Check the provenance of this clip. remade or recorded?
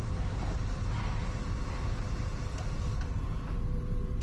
recorded